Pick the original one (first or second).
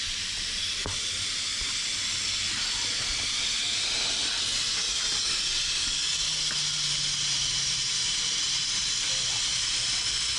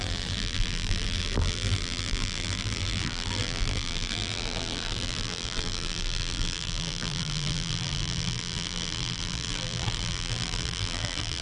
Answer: first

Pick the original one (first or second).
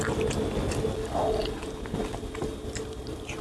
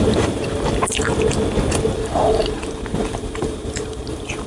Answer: first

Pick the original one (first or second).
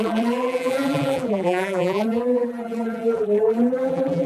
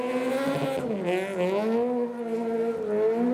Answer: second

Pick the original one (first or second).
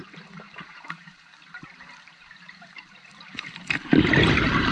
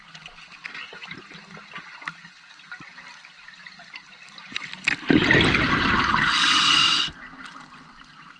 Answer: second